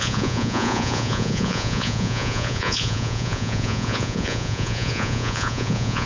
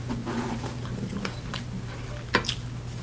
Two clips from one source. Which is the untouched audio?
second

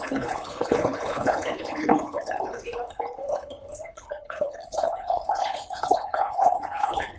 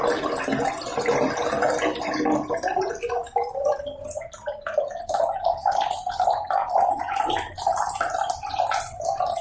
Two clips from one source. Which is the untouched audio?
second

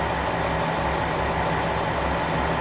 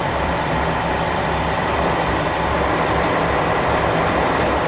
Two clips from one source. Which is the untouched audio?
first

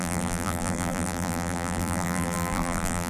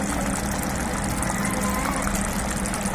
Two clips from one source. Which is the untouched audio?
second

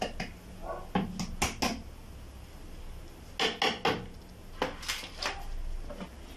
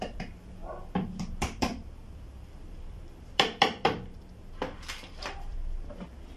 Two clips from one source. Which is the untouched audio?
first